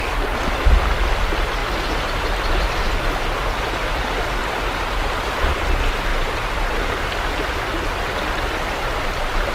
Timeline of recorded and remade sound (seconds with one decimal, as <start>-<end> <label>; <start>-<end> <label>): 0.0-4.4 recorded; 4.4-5.3 remade; 5.3-6.1 recorded; 6.1-6.8 remade; 6.8-9.5 recorded